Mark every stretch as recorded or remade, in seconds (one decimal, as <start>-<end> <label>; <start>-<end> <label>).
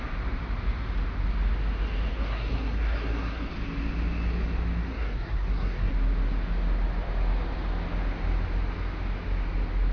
0.0-2.1 recorded; 2.1-3.5 remade; 3.5-4.9 recorded; 4.9-5.9 remade; 5.9-9.9 recorded